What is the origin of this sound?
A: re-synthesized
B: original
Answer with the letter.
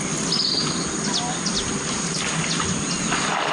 B